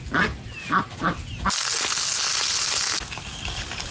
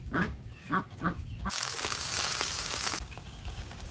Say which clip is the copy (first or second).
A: second